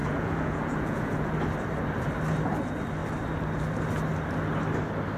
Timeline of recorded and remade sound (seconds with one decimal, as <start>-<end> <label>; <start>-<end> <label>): 0.0-1.3 remade; 1.3-5.2 recorded